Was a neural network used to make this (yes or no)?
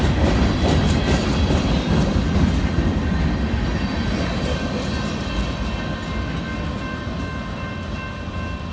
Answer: no